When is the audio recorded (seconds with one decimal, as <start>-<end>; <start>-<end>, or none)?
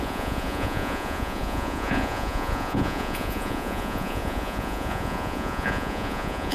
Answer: none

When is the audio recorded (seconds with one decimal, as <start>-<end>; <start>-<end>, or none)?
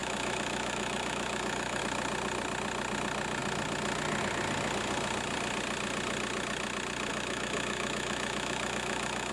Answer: 1.8-7.1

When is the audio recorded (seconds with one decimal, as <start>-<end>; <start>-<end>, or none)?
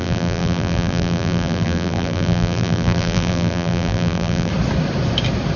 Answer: 4.5-5.6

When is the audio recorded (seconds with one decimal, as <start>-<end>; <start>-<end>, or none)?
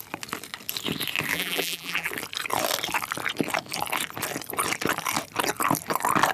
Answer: 0.0-1.3; 2.1-6.3